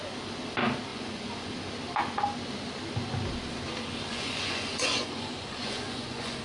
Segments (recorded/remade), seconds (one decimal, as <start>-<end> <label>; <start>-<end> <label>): 0.0-0.9 recorded; 0.9-1.5 remade; 1.5-4.1 recorded; 4.1-6.4 remade